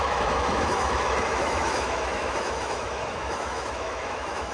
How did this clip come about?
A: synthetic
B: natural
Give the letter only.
A